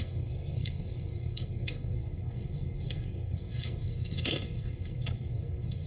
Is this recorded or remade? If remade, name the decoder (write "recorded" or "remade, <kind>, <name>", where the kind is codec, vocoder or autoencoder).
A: remade, codec, SNAC